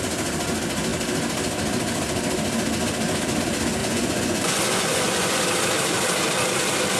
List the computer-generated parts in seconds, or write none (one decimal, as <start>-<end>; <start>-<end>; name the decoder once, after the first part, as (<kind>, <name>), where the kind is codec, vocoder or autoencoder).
3.8-5.4 (vocoder, Vocos)